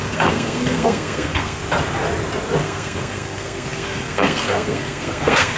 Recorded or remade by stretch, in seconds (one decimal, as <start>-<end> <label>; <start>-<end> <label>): 0.0-1.6 remade; 1.6-2.6 recorded; 2.6-5.6 remade